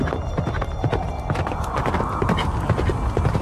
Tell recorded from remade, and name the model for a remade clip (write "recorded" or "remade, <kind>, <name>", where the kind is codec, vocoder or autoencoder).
recorded